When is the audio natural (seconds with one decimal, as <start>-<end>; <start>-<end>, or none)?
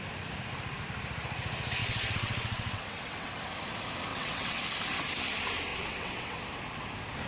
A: 0.0-1.8; 3.4-4.1; 4.6-5.7; 6.4-7.3